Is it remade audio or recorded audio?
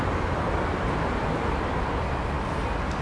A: recorded